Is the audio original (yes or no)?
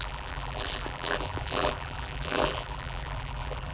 no